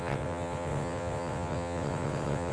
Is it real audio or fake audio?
fake